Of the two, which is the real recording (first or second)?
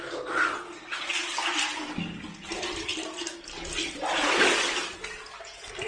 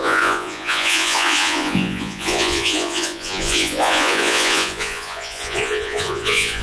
first